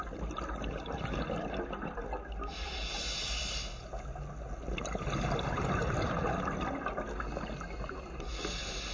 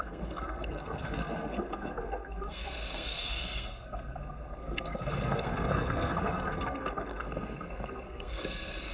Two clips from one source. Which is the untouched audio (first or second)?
first